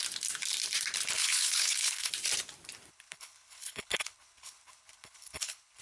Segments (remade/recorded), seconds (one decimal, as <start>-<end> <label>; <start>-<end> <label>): 0.0-1.2 recorded; 1.2-2.1 remade; 2.1-2.9 recorded; 2.9-5.8 remade